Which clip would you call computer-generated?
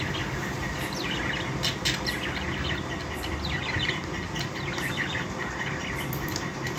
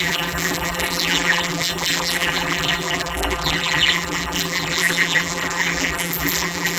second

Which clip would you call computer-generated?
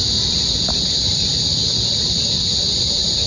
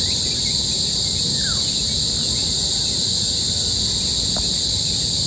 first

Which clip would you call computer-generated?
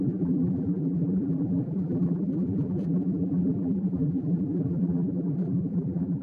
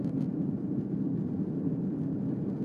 first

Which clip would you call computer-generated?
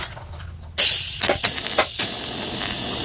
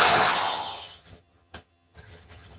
second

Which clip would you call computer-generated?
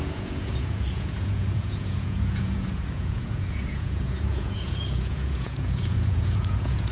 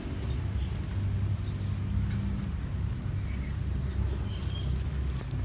first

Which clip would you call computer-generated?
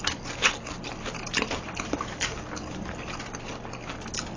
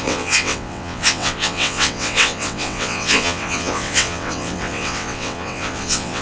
second